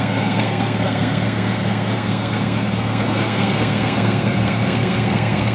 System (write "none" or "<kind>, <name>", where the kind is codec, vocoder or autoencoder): codec, SNAC